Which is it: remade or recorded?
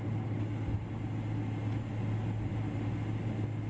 recorded